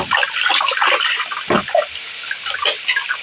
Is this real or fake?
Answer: real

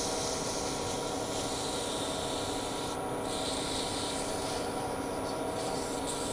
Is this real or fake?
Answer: real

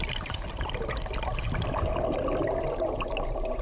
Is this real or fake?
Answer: real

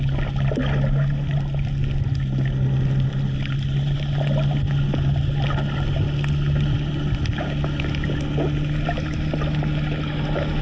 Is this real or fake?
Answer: real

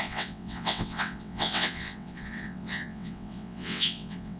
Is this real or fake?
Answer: fake